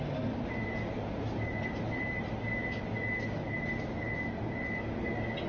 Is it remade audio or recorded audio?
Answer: recorded